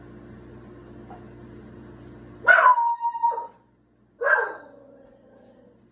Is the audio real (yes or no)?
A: yes